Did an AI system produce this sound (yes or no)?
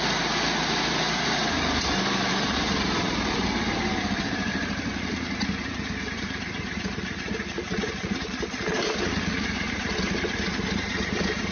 yes